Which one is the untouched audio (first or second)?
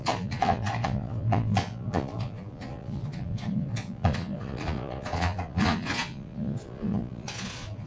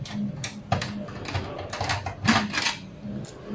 second